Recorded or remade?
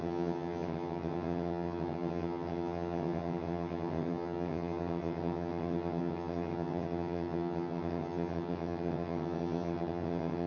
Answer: remade